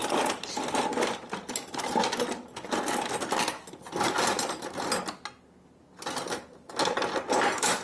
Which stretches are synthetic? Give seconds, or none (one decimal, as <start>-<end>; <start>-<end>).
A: none